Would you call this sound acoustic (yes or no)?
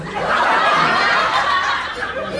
yes